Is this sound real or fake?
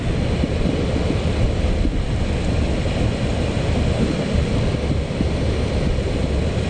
real